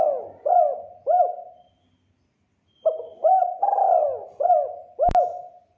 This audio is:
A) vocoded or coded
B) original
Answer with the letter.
B